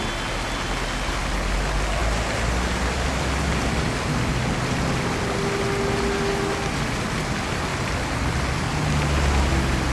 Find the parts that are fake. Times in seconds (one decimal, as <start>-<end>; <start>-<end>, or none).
none